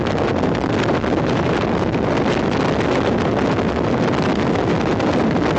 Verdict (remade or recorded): recorded